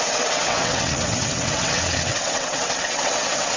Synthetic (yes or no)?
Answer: yes